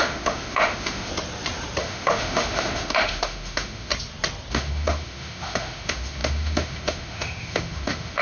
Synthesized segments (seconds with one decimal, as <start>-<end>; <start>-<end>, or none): 0.0-1.1; 1.8-3.9; 4.5-8.2

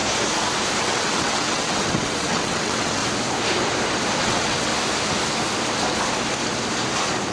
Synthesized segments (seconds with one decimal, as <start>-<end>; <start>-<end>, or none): 0.8-3.0; 4.2-4.7

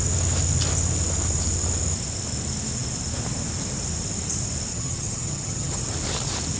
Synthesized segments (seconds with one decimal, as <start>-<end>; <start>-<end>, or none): 4.7-5.8